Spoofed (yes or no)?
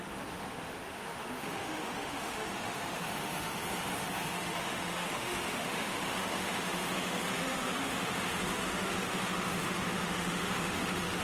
yes